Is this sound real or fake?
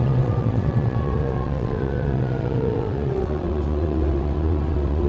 fake